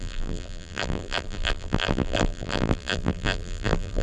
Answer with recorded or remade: remade